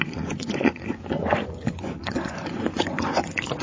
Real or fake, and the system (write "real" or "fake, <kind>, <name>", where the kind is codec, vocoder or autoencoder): fake, vocoder, Vocos